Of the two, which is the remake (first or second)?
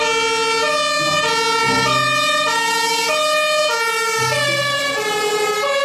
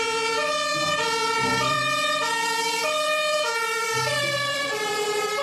second